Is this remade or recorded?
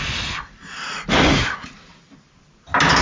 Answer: recorded